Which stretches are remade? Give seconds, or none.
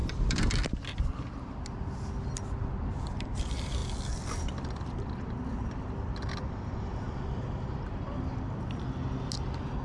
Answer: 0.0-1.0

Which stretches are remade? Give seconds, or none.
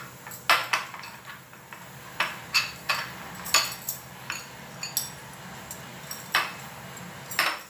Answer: 0.6-2.0; 5.9-6.7